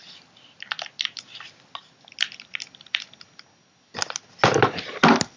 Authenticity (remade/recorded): recorded